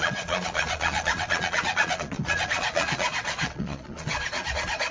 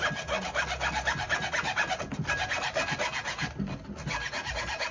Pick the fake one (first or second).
first